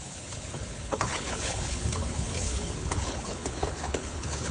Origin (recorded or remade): remade